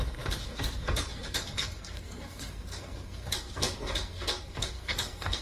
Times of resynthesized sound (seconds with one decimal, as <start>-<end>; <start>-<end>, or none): 0.0-5.4